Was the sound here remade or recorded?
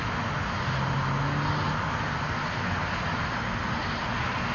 recorded